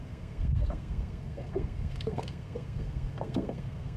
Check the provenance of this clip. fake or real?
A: fake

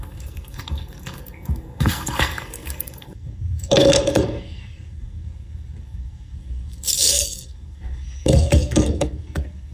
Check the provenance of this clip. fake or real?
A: fake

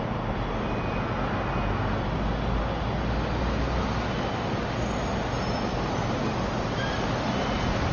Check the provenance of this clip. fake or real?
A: real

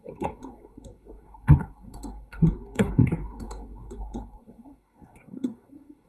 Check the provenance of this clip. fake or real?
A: fake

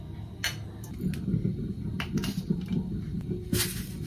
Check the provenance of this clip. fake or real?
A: real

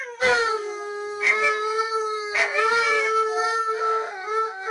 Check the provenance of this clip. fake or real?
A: fake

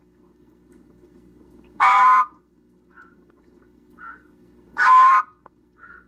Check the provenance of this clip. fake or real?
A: fake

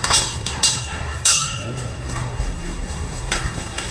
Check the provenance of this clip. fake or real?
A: fake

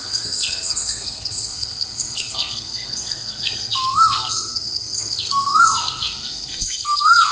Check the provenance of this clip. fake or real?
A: fake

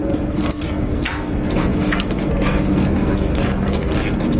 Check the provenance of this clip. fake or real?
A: fake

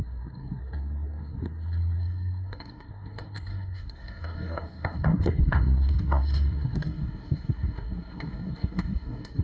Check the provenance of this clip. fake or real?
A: fake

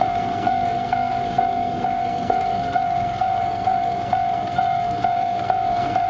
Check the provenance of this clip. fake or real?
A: fake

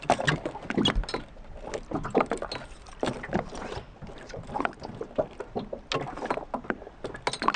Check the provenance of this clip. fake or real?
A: real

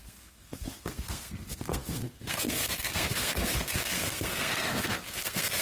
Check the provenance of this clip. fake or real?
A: fake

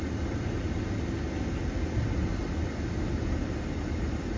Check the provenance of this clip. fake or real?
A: real